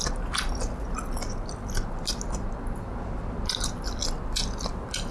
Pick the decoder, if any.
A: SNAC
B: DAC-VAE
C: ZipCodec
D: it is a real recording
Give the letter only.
D